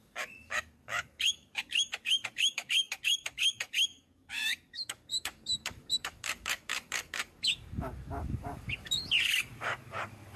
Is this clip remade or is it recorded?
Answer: remade